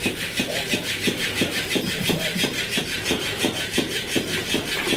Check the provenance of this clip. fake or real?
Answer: fake